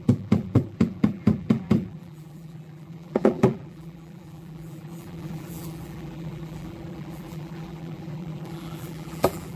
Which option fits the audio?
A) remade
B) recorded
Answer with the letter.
A